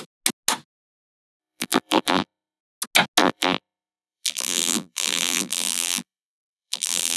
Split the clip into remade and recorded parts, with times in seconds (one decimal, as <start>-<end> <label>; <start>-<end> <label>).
0.0-1.4 recorded; 1.4-2.6 remade; 2.6-3.2 recorded; 3.2-7.2 remade